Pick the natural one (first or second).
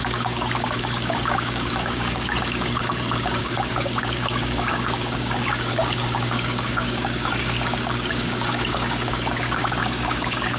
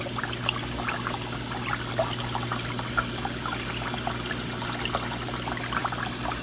second